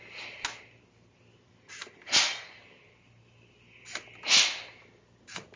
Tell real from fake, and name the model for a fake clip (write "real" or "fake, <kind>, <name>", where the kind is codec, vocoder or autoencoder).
real